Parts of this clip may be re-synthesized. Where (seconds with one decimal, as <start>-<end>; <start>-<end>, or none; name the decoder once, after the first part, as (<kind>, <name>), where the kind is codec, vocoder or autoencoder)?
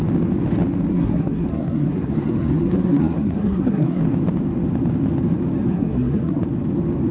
0.9-4.0 (codec, SNAC); 5.7-6.4